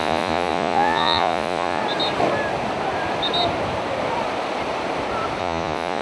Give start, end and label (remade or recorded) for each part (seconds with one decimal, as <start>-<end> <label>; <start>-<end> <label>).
0.0-1.8 remade; 1.8-5.4 recorded; 5.4-6.0 remade